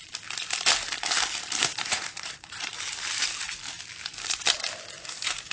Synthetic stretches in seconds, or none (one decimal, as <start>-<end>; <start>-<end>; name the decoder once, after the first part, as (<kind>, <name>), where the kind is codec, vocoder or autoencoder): 1.6-2.7 (vocoder, Vocos)